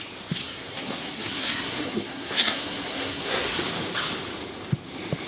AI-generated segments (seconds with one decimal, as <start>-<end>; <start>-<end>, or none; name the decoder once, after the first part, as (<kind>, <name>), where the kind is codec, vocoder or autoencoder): 0.4-3.6 (codec, SNAC)